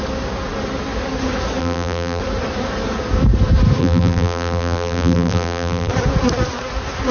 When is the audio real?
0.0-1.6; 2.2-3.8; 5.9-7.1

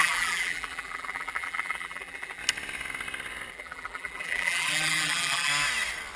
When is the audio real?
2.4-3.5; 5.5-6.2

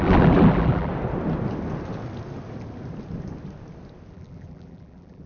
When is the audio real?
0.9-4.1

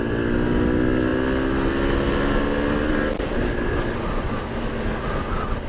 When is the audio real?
0.0-5.7

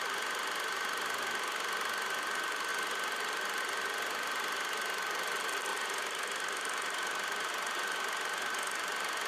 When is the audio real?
0.0-5.7; 7.5-9.3

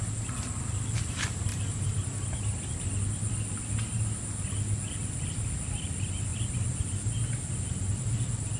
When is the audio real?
0.0-1.5; 2.7-8.6

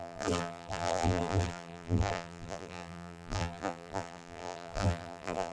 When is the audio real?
none